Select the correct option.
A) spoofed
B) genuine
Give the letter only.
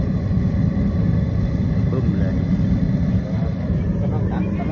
B